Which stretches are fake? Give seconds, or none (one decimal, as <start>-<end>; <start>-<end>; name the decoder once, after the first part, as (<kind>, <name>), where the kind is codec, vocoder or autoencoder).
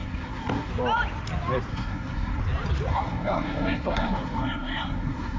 0.0-0.7 (codec, SNAC); 1.7-2.4; 2.9-5.4